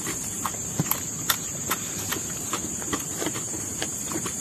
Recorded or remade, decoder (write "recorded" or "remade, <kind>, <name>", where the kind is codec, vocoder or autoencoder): remade, vocoder, BigVGAN v2